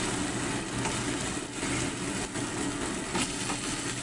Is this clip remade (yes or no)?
no